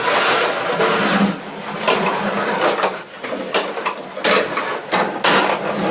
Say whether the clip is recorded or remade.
recorded